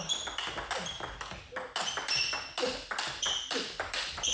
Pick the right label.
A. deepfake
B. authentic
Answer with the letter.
B